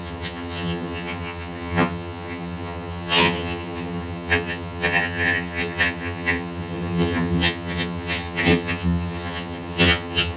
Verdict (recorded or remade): remade